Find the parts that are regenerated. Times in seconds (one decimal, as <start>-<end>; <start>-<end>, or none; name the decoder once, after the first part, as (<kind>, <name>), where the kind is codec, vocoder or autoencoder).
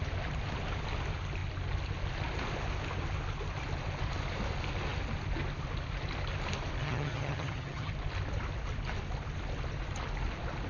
6.8-7.9 (vocoder, HiFi-GAN)